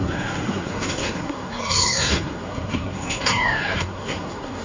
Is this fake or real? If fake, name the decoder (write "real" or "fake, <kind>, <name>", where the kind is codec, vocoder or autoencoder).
fake, codec, SNAC